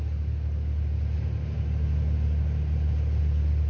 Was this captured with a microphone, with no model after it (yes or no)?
yes